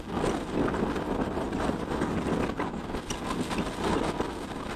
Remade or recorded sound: recorded